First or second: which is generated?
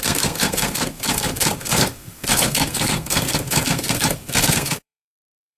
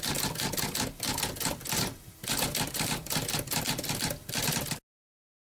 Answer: first